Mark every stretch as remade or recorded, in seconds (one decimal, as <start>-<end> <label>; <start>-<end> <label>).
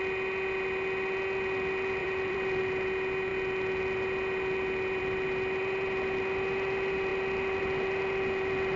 0.0-2.0 recorded; 2.0-2.6 remade; 2.6-8.8 recorded